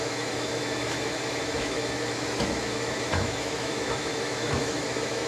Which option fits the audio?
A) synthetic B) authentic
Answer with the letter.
A